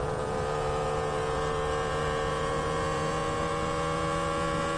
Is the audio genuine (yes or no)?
no